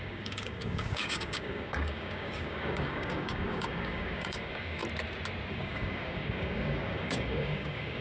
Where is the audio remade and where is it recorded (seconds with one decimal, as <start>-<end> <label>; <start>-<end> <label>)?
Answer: 0.0-4.8 remade; 4.8-5.5 recorded; 5.5-8.0 remade